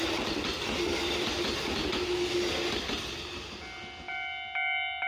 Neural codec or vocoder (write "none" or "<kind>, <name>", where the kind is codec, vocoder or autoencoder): none